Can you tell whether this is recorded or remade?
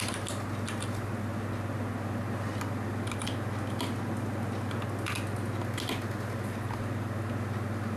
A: recorded